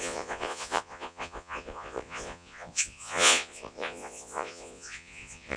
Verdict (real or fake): fake